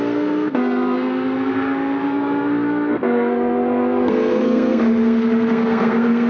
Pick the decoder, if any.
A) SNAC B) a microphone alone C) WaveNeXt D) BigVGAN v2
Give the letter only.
A